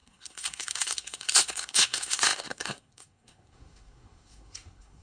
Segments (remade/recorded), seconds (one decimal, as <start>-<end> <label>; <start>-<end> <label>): 0.0-5.0 remade